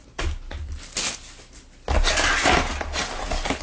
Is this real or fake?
real